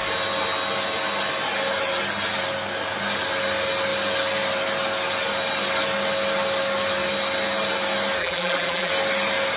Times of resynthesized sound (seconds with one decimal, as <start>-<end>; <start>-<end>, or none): 8.2-8.9